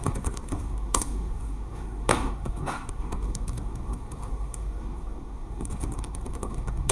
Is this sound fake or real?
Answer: fake